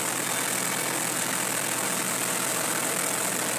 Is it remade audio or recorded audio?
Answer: recorded